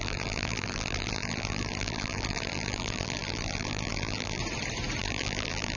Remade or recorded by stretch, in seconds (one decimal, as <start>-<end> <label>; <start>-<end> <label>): 0.0-4.4 remade; 4.4-5.0 recorded; 5.0-5.8 remade